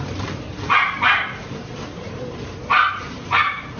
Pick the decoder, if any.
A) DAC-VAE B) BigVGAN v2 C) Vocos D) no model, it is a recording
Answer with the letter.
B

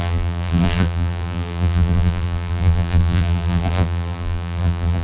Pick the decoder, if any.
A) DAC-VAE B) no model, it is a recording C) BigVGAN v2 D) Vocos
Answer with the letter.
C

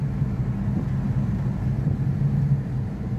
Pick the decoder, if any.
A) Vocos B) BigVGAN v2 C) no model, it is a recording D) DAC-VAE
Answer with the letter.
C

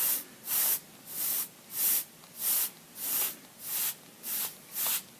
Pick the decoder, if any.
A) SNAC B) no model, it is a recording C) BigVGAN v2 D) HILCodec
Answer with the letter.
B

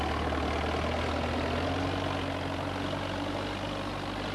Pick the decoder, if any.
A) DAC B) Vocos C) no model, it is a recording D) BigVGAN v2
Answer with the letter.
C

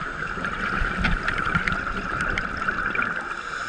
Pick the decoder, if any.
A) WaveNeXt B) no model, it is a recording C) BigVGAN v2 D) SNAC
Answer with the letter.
B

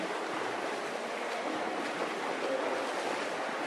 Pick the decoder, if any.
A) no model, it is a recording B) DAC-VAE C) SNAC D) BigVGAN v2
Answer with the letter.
D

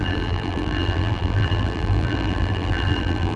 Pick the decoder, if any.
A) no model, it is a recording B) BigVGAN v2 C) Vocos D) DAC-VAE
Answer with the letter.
B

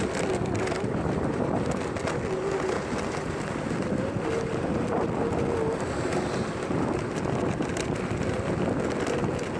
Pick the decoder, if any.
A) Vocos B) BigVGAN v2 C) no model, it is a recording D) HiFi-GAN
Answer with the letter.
C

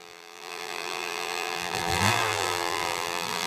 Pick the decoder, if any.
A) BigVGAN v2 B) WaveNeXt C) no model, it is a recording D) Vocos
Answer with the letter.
A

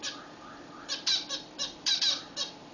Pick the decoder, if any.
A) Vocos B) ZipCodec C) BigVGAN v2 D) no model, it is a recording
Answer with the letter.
C